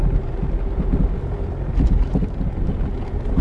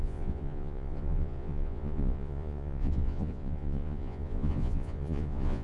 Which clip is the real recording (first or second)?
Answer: first